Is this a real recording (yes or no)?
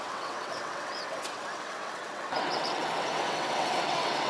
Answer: no